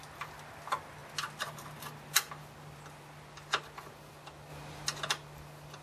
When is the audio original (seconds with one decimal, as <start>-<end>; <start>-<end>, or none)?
0.0-5.8